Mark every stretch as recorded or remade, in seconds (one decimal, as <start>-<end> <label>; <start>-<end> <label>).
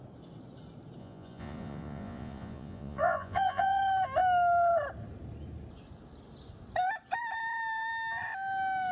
0.0-1.0 recorded; 1.0-3.8 remade; 3.8-8.9 recorded